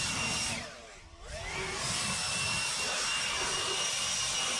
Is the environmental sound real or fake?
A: fake